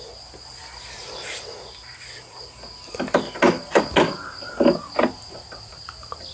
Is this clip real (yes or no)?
yes